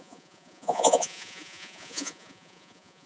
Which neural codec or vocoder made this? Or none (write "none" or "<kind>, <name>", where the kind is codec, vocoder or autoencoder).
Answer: vocoder, Vocos